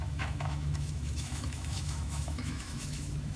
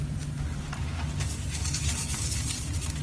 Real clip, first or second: second